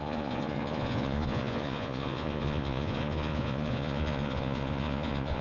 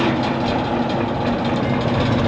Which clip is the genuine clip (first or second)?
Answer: second